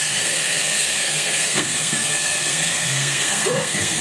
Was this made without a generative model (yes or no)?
no